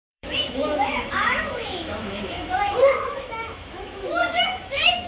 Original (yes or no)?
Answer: no